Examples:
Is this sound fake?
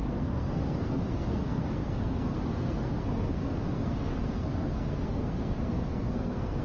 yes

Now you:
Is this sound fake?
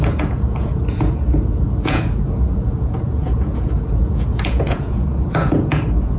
yes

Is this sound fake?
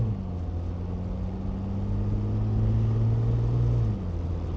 no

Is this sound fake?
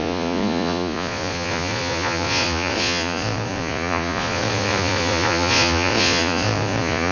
yes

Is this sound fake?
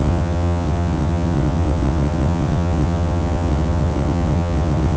yes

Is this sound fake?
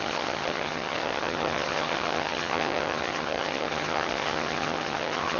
yes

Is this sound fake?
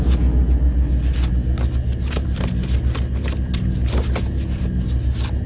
no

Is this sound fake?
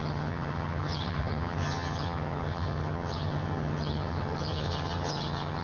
yes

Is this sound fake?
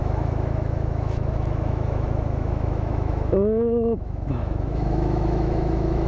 yes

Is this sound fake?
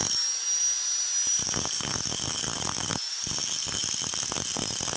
no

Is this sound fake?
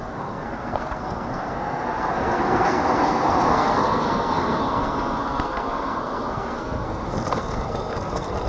yes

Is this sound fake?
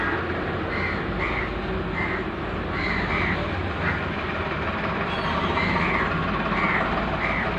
no